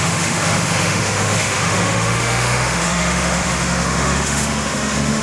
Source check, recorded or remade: remade